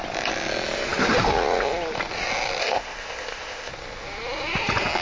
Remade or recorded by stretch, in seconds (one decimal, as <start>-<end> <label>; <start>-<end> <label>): 0.0-2.6 recorded; 2.6-3.7 remade; 3.7-5.0 recorded